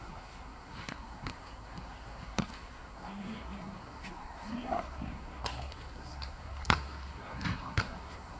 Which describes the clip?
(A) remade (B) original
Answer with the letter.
A